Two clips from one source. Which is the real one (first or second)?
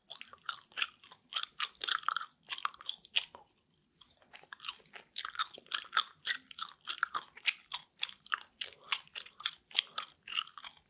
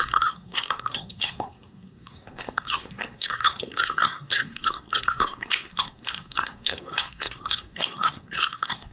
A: first